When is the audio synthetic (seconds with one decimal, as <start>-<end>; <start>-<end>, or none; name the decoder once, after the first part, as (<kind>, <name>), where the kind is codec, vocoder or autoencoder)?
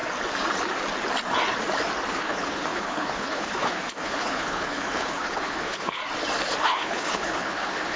2.1-6.0 (codec, HILCodec); 6.6-8.0